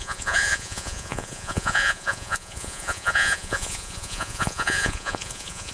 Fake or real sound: fake